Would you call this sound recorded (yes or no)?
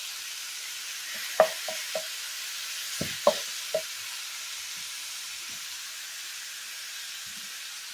yes